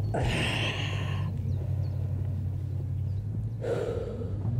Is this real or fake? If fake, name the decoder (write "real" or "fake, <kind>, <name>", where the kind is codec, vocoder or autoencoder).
real